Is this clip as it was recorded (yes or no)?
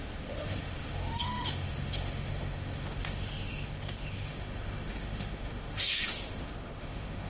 no